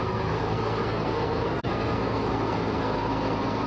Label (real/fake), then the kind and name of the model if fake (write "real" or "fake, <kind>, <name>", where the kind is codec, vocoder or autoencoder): fake, codec, SNAC